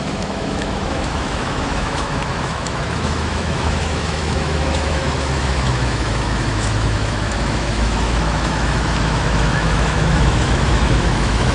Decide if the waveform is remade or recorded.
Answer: remade